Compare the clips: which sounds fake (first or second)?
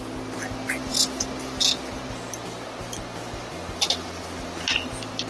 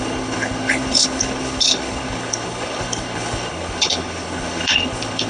second